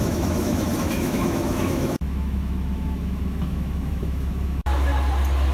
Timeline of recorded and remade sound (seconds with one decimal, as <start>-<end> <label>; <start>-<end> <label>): 0.0-4.9 remade; 4.9-5.5 recorded